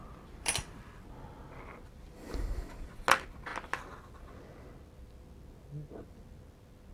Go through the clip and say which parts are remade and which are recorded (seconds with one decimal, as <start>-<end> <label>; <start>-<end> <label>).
0.0-0.8 remade; 0.8-6.9 recorded